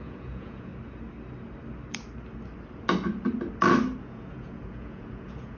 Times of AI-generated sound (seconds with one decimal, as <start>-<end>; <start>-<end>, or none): 0.0-0.7; 4.0-5.6